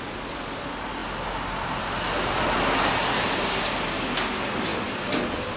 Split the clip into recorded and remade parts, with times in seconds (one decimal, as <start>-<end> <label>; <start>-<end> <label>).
0.0-5.6 recorded